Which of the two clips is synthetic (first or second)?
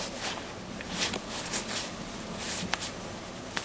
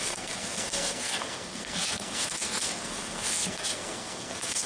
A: second